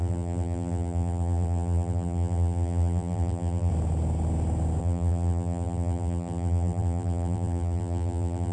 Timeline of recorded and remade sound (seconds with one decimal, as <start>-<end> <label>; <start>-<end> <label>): 0.0-3.7 remade; 3.7-4.8 recorded; 4.8-8.5 remade